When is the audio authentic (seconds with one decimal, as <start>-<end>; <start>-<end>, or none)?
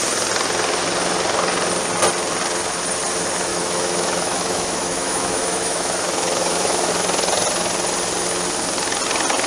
0.0-3.5; 6.9-9.5